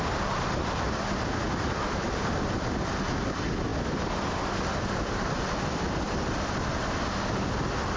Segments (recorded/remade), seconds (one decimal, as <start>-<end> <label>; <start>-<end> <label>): 0.0-3.7 recorded; 3.7-7.0 remade; 7.0-8.0 recorded

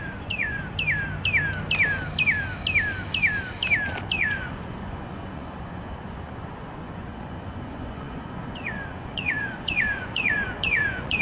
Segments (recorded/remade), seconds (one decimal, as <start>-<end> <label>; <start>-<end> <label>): 0.0-0.6 remade; 0.6-4.2 recorded; 4.2-11.2 remade